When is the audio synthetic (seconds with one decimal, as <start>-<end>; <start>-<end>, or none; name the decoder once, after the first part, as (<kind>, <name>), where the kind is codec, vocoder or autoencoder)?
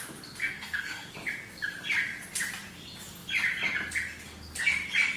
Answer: 0.4-1.1 (codec, SNAC)